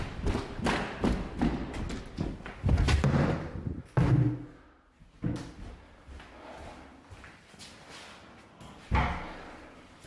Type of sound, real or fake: real